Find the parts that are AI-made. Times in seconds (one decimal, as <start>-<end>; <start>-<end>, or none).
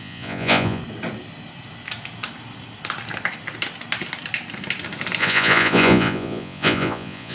0.0-0.8; 5.2-7.3